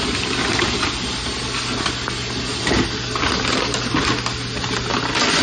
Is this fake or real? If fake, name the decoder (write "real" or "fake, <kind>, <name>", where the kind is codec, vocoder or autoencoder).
real